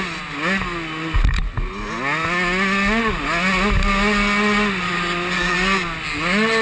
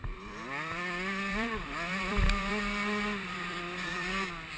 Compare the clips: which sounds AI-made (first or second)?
second